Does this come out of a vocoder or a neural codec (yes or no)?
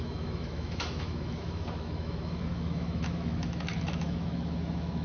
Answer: yes